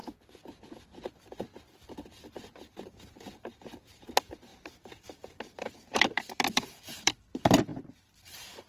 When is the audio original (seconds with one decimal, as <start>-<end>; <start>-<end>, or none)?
0.0-4.5; 7.1-8.7